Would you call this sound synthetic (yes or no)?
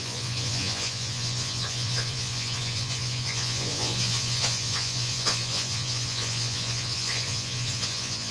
yes